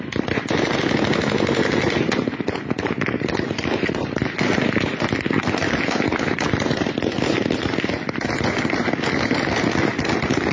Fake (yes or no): no